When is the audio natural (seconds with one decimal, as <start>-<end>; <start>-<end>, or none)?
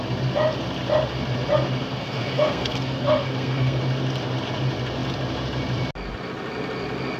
0.0-1.8; 3.8-7.2